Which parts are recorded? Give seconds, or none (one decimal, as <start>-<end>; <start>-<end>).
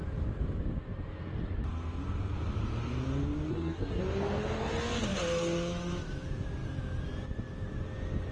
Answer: 0.0-3.5; 4.0-8.3